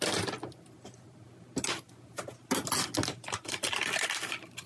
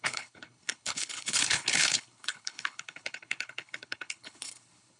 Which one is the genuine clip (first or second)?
first